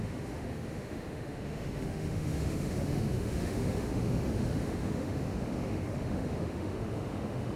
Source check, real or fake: fake